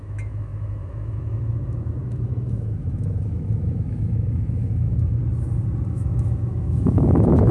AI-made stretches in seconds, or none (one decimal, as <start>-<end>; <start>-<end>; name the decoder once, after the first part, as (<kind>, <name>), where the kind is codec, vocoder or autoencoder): 0.0-5.2 (autoencoder, DAC-VAE); 5.9-7.5